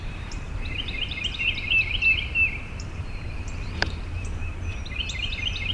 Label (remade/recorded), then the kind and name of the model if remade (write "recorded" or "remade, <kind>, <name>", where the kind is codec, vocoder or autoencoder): remade, vocoder, BigVGAN v2